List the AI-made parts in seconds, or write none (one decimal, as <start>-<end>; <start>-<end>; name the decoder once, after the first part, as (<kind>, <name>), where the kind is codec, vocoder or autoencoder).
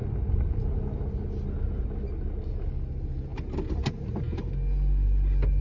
none